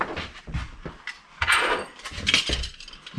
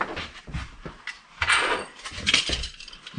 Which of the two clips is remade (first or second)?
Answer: second